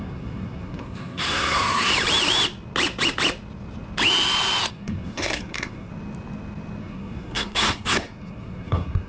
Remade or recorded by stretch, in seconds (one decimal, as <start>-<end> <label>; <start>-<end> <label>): 0.0-1.9 remade; 1.9-4.7 recorded; 4.7-5.9 remade; 5.9-6.8 recorded; 6.8-9.1 remade